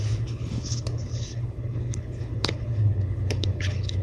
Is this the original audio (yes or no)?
no